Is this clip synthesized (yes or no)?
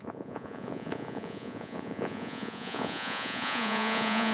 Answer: yes